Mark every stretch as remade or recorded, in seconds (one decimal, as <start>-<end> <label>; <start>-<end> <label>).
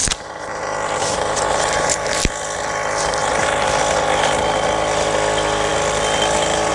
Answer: 0.0-2.1 remade; 2.1-6.7 recorded